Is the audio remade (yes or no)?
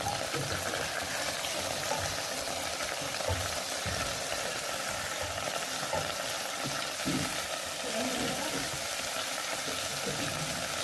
no